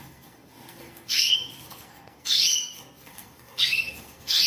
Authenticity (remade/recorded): remade